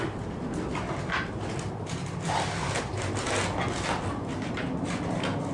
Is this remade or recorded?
recorded